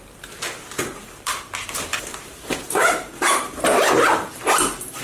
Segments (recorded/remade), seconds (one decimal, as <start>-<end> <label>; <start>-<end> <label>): 0.0-0.8 recorded; 0.8-1.5 remade; 1.5-1.9 recorded; 1.9-5.0 remade